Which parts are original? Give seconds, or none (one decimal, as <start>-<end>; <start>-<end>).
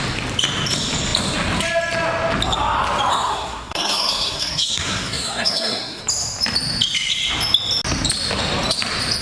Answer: 0.0-3.1; 6.0-9.2